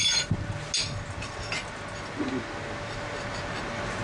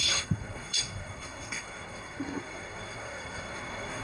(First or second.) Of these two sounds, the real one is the first